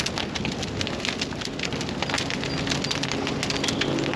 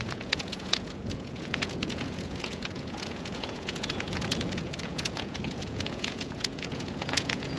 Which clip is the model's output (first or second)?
second